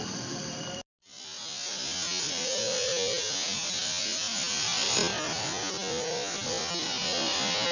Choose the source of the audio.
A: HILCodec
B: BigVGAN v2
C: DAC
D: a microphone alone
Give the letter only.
D